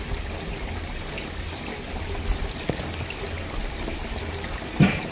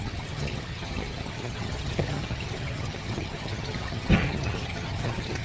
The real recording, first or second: first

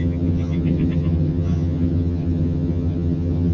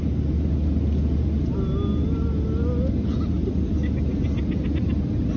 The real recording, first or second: second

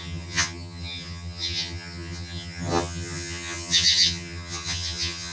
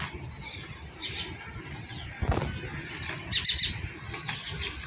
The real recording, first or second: second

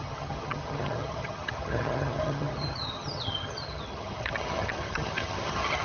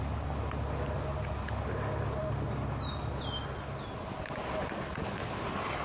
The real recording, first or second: second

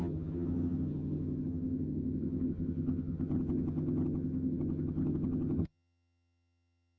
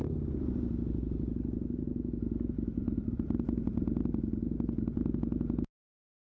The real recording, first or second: second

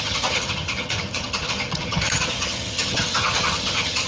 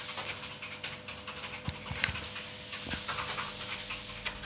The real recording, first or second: second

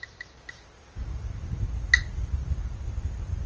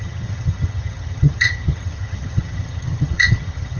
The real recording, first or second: first